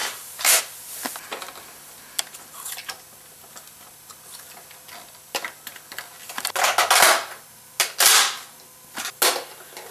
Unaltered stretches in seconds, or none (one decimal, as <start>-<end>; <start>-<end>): 0.6-9.9